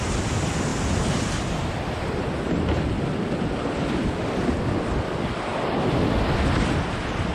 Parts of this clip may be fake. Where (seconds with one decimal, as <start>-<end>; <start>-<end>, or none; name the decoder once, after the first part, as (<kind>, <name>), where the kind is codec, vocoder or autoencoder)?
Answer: none